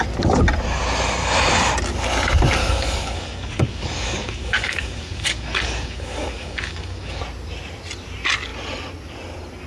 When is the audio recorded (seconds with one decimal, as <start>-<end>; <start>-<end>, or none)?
0.0-2.6; 7.2-9.7